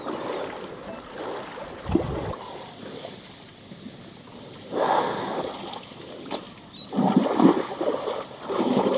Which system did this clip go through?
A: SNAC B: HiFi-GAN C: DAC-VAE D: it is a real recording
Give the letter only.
D